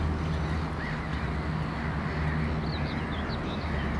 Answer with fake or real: real